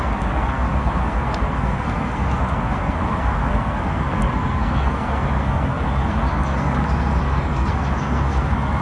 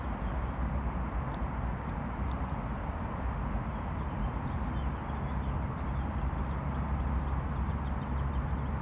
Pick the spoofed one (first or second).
first